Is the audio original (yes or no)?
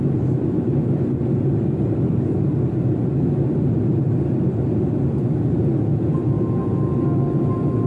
yes